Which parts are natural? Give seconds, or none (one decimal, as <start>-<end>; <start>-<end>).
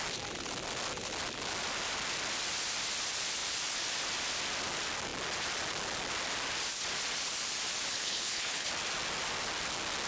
0.0-7.9; 8.7-10.1